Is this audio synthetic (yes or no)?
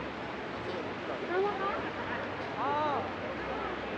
no